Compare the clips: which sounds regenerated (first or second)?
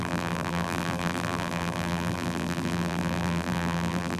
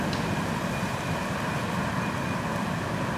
first